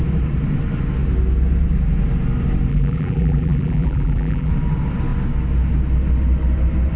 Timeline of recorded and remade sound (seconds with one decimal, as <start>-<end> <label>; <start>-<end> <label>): 0.0-2.7 recorded; 2.7-4.5 remade; 4.5-7.0 recorded